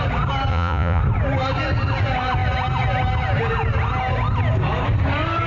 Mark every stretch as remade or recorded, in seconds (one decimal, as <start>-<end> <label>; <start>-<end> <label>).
0.0-0.5 recorded; 0.5-1.0 remade; 1.0-5.5 recorded